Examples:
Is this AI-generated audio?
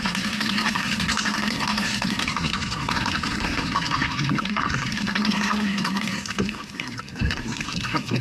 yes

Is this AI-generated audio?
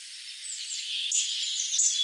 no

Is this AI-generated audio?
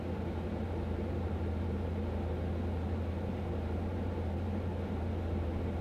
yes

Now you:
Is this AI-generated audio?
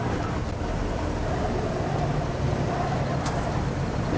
no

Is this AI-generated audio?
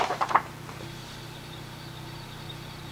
yes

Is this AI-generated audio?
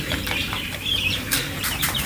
yes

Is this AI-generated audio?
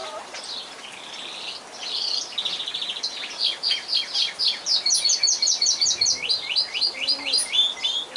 no